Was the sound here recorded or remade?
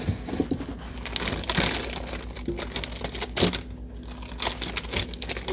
recorded